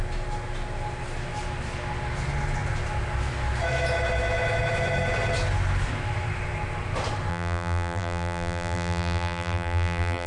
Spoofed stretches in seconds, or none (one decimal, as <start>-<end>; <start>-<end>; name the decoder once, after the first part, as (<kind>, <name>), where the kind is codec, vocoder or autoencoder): 7.3-10.3 (vocoder, BigVGAN v2)